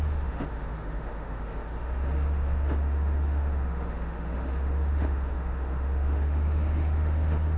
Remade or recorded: remade